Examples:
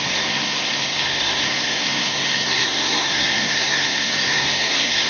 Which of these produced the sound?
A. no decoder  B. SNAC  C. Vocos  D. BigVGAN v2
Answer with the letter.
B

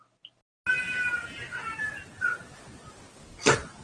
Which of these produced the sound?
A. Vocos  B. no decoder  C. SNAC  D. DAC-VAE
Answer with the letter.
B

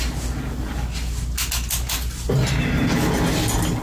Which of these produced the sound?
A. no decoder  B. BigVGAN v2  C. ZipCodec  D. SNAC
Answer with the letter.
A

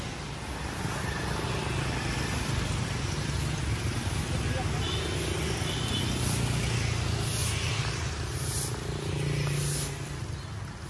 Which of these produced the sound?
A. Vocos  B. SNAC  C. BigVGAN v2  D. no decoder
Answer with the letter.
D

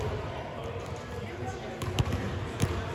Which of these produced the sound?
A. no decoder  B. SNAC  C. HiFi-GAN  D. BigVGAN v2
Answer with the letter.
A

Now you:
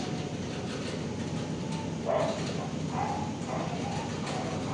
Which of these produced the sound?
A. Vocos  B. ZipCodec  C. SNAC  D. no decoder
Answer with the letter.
D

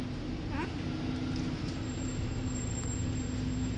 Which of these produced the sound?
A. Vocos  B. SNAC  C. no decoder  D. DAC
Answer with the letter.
C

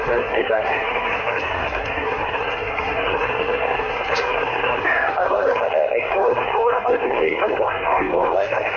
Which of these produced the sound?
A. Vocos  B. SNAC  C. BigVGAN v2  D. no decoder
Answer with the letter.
B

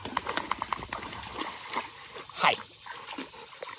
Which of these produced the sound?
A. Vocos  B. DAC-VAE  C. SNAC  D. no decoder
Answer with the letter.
D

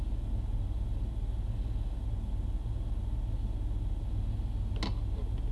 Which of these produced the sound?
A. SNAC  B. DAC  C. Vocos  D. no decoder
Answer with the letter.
D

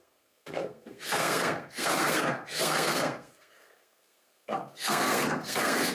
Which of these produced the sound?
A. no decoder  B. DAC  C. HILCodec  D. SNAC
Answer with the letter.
D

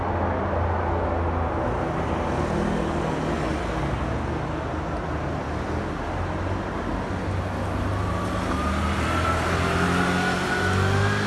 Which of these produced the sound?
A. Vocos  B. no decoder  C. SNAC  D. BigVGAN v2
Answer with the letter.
B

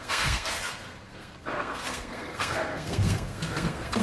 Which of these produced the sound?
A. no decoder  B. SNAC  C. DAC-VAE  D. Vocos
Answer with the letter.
B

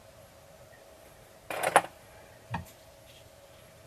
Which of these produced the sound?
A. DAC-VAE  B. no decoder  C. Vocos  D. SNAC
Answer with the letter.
B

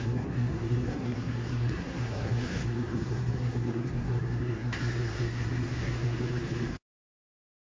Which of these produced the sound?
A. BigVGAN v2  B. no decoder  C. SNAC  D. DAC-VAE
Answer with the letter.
C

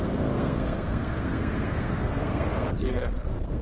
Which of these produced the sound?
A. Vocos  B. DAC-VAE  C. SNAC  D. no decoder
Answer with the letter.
C